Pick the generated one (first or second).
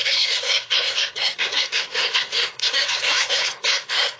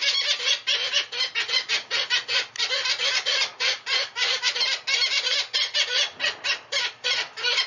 first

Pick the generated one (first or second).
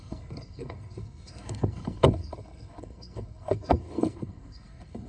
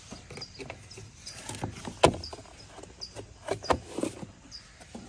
first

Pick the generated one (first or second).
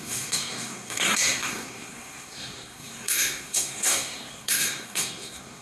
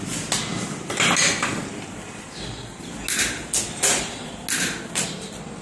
first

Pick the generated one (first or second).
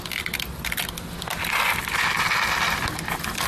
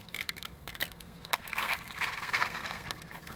second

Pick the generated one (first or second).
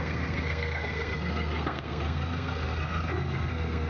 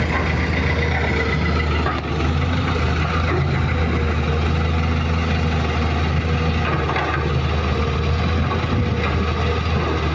first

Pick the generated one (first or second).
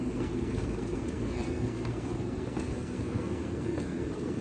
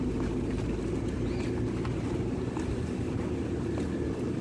first